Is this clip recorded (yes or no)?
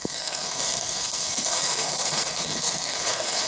no